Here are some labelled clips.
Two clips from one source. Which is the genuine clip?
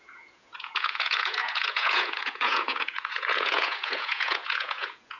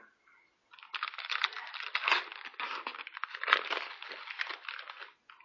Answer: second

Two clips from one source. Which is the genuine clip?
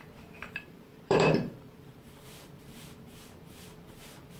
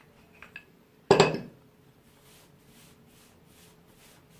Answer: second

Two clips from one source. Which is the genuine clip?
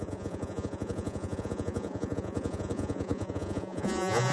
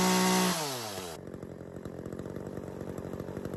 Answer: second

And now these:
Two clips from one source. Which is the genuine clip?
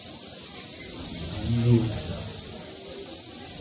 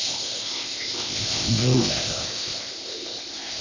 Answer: first